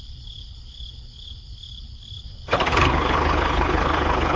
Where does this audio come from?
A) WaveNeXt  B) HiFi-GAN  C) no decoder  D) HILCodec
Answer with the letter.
D